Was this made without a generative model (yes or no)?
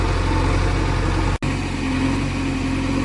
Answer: yes